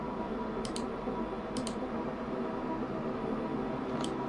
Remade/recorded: recorded